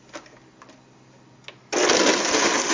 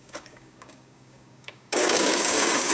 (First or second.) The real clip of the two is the first